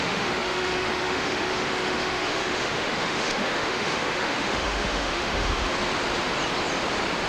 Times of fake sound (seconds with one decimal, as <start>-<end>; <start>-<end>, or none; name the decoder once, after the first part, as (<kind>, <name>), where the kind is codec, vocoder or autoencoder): 0.0-5.7 (autoencoder, DAC-VAE)